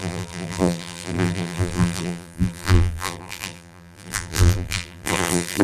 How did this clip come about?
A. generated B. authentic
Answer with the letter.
A